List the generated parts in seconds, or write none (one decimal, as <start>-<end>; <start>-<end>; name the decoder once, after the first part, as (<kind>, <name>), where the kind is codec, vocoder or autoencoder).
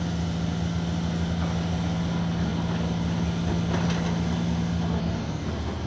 5.0-5.5 (codec, DAC)